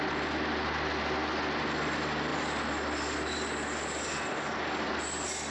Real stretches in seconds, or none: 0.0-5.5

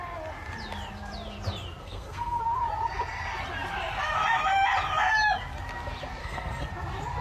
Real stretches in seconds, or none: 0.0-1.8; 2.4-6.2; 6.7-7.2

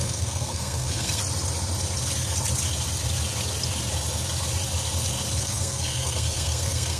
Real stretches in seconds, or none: 1.2-5.4

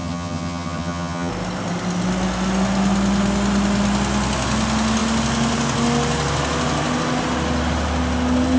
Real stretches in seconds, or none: 1.3-8.6